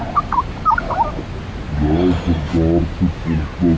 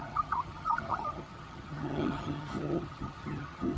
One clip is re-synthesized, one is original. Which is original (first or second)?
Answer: first